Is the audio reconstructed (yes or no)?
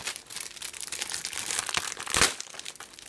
yes